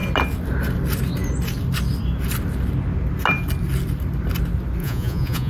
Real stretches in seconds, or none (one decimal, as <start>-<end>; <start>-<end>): 0.0-4.8